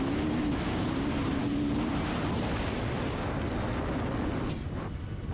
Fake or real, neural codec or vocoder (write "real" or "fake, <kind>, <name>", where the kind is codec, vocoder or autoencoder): real